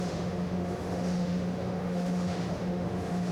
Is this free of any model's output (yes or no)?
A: no